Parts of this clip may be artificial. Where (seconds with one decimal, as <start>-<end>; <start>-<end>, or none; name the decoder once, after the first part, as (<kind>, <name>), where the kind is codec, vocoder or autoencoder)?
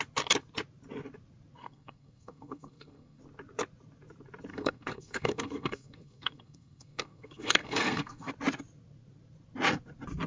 1.6-3.2 (codec, SNAC); 4.5-8.3